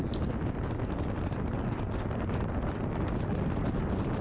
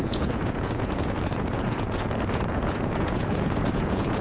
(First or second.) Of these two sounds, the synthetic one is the second